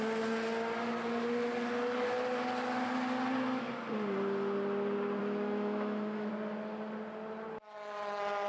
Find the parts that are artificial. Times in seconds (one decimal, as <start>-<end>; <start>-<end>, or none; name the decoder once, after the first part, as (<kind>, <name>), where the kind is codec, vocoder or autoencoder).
5.2-6.3 (autoencoder, DAC-VAE)